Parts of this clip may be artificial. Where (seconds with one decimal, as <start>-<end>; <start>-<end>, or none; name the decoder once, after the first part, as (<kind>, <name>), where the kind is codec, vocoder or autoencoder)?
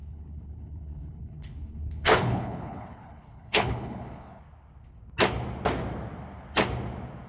0.0-4.4 (codec, HILCodec)